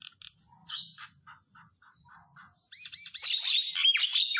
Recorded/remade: recorded